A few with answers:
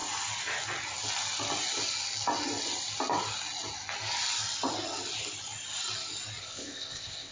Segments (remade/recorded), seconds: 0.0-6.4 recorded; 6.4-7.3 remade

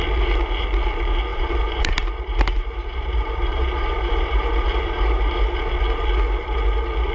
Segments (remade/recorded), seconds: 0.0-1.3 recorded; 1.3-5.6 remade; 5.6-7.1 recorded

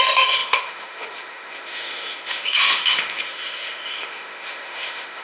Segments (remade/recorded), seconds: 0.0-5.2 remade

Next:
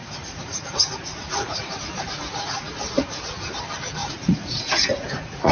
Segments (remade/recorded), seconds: 0.0-2.8 remade; 2.8-4.0 recorded; 4.0-5.5 remade

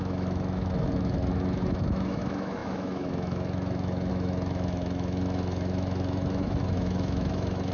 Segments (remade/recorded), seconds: 0.0-7.7 remade

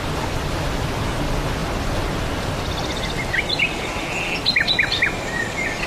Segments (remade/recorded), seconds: 0.0-5.9 recorded